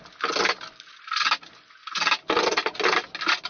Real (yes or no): yes